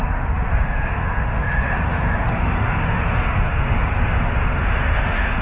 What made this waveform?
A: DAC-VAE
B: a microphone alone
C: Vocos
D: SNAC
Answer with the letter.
A